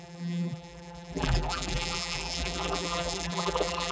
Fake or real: fake